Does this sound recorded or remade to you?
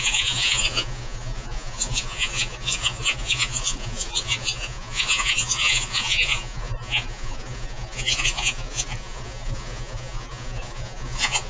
remade